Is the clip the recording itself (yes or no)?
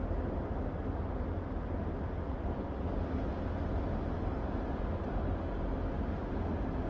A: yes